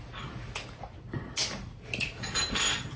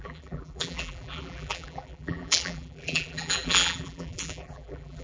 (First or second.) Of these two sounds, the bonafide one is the first